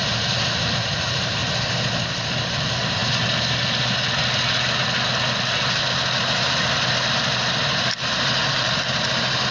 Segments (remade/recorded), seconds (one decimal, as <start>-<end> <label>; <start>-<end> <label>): 0.0-1.4 remade; 1.4-2.3 recorded; 2.3-3.0 remade; 3.0-7.9 recorded; 7.9-9.5 remade